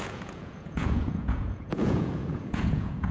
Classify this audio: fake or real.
fake